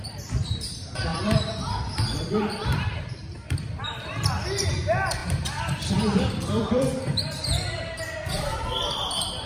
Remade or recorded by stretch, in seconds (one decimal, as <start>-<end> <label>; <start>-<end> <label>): 0.0-9.5 remade